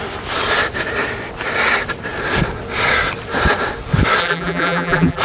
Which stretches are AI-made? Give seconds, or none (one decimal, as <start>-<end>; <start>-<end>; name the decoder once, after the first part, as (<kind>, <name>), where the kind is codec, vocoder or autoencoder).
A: 4.2-5.2 (vocoder, BigVGAN v2)